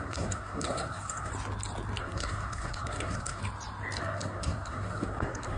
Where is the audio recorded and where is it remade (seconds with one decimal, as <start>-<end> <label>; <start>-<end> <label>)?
0.0-1.3 remade; 1.3-2.0 recorded; 2.0-3.4 remade; 3.4-4.0 recorded; 4.0-5.6 remade